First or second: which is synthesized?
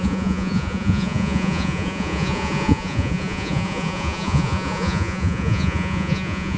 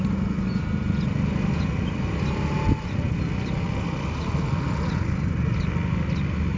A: first